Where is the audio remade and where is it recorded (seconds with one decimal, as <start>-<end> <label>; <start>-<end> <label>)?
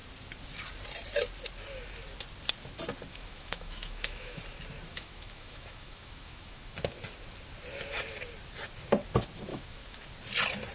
0.0-3.1 recorded; 3.1-4.4 remade; 4.4-4.9 recorded; 4.9-6.7 remade; 6.7-9.5 recorded; 9.5-10.1 remade; 10.1-10.7 recorded